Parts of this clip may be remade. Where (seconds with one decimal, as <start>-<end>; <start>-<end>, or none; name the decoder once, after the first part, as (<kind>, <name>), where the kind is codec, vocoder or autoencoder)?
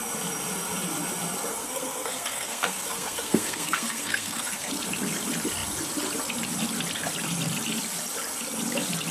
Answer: 1.5-4.7 (codec, SNAC)